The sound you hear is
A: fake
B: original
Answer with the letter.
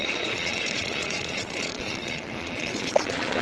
A